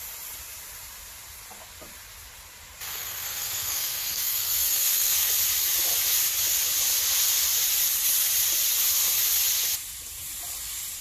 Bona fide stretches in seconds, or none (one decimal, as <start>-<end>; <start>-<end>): 0.0-2.9; 5.3-11.0